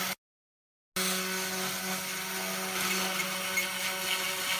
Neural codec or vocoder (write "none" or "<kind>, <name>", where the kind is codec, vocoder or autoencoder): none